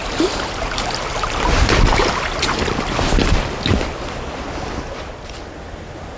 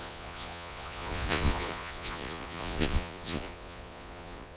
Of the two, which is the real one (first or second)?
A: first